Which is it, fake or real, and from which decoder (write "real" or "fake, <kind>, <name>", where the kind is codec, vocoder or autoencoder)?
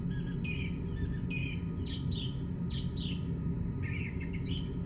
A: real